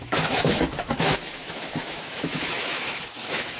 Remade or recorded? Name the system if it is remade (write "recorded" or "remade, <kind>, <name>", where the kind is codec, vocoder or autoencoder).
remade, autoencoder, DAC-VAE